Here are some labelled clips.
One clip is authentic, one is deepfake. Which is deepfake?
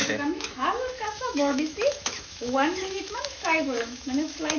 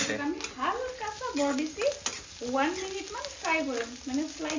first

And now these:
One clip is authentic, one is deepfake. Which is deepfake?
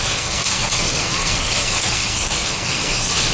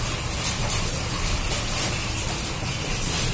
first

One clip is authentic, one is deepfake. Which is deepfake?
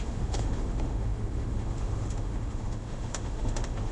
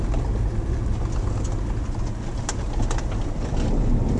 first